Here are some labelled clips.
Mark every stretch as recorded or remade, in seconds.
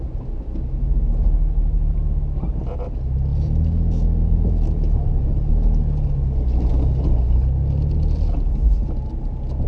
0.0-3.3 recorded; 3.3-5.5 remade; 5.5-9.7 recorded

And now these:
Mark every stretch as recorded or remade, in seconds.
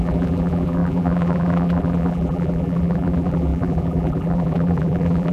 0.0-5.3 remade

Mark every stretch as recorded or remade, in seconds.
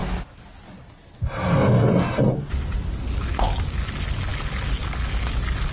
0.0-5.7 recorded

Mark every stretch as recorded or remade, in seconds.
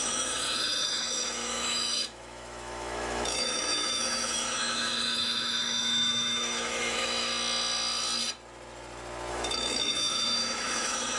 0.0-7.3 remade; 7.3-9.3 recorded; 9.3-11.2 remade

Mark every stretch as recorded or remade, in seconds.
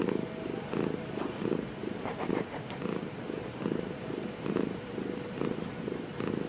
0.0-1.8 recorded; 1.8-5.7 remade; 5.7-6.5 recorded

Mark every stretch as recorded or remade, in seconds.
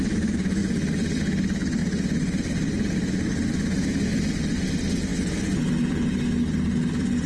0.0-7.3 recorded